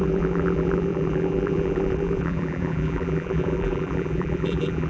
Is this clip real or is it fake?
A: fake